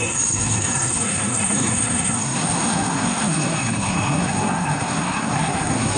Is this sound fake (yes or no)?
yes